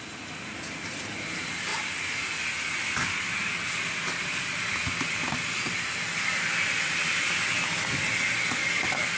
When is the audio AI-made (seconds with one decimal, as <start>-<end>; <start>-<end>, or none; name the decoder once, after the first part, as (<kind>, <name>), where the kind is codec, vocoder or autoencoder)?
none

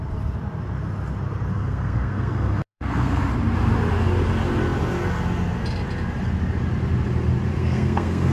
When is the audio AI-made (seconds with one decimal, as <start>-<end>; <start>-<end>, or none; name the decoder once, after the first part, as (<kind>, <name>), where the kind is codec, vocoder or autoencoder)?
1.5-3.2 (codec, SNAC); 7.6-8.3

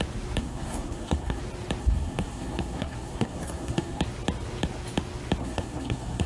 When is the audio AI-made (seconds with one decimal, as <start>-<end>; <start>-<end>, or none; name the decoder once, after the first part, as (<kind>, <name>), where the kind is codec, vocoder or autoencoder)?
0.4-1.4 (codec, SNAC); 1.8-4.0; 5.4-6.3

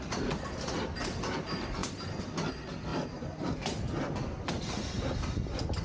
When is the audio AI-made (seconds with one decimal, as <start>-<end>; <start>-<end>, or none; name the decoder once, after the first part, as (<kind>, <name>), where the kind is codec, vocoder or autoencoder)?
2.9-3.6 (vocoder, BigVGAN v2)

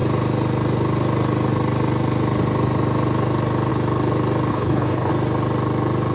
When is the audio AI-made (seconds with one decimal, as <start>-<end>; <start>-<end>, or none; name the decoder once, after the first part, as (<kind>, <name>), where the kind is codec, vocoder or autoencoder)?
4.5-5.1 (codec, HILCodec)